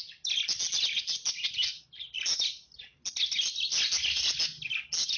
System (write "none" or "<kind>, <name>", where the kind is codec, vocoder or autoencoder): none